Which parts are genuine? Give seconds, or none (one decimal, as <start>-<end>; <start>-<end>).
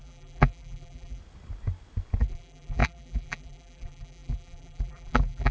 1.2-2.2